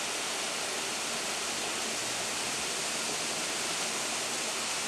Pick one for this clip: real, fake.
real